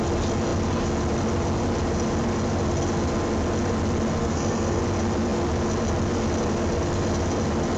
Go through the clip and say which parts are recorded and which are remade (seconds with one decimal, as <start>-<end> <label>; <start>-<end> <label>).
0.0-4.2 recorded; 4.2-4.8 remade; 4.8-7.8 recorded